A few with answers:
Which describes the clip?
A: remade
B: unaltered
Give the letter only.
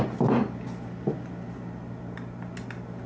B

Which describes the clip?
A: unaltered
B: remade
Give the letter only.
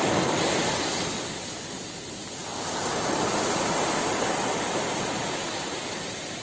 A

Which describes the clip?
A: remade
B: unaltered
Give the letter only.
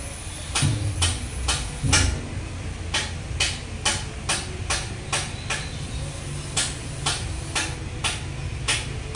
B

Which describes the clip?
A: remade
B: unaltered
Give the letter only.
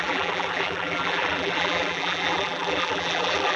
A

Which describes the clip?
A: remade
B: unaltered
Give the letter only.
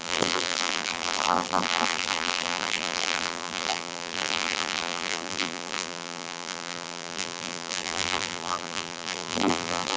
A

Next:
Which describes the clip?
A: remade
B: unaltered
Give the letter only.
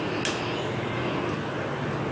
B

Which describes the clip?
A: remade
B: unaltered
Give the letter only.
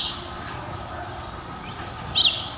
B